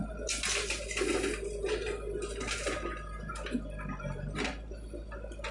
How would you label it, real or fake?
real